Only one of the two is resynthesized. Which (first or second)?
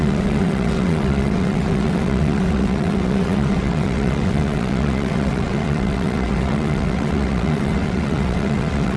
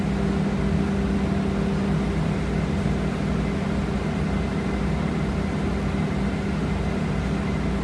first